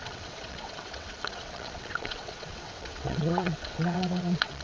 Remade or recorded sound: remade